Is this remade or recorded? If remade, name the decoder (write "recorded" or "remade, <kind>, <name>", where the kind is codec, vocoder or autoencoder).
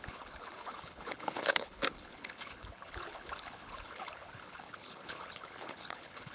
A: remade, codec, HILCodec